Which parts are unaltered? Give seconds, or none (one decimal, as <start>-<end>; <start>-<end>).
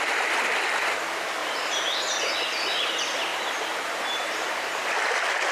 0.0-1.4; 2.3-3.3; 4.7-5.5